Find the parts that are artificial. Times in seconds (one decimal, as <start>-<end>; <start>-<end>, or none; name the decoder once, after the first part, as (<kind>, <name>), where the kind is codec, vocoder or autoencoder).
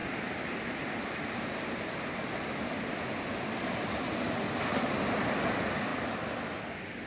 none